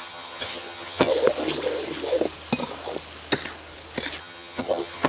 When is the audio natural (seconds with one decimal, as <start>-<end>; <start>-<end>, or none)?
1.1-4.2